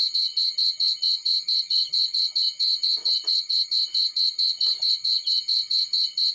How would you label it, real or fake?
fake